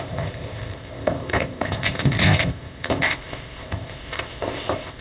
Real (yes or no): no